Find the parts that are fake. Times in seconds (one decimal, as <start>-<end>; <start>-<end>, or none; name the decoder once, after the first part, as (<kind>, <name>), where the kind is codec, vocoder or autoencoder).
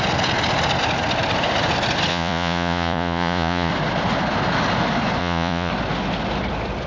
2.1-3.7 (vocoder, Vocos); 5.2-5.7